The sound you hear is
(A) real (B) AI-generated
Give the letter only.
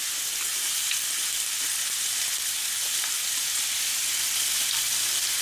A